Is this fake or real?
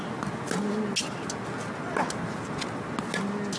real